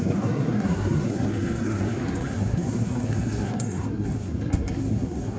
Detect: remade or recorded remade